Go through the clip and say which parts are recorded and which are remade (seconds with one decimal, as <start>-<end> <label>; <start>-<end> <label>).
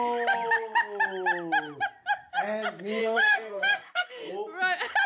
0.0-3.0 recorded; 3.0-4.3 remade; 4.3-5.1 recorded